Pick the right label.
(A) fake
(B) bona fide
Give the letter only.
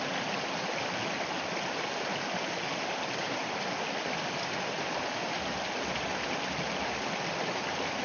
B